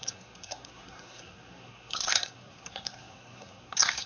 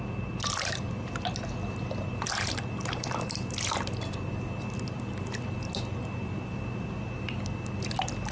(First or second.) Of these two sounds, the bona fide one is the second